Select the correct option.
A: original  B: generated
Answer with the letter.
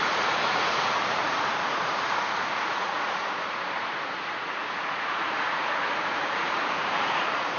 B